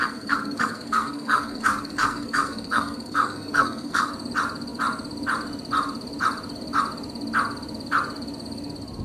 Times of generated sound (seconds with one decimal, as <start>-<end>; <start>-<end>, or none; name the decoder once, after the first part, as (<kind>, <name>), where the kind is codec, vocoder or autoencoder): 0.0-4.1 (codec, SNAC)